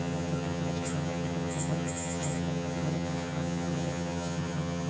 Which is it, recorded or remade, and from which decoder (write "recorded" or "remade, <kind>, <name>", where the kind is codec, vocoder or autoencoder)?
remade, vocoder, HiFi-GAN